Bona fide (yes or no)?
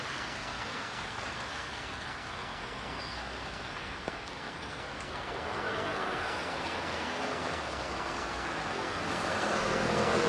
no